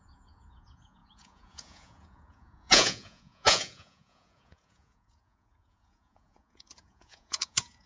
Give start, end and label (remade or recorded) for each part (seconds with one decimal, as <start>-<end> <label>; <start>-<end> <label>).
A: 0.0-7.9 remade